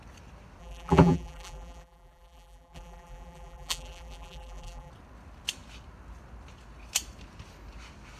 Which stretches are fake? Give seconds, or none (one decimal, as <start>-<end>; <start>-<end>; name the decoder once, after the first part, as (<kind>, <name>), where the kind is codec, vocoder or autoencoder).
0.6-4.9 (vocoder, BigVGAN v2)